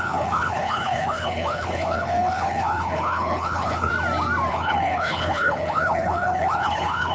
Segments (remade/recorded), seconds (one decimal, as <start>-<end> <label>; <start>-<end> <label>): 0.0-3.9 remade; 3.9-4.5 recorded; 4.5-7.1 remade